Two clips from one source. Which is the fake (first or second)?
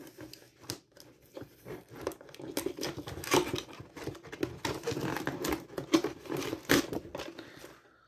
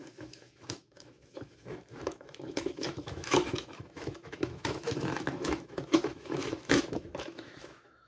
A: second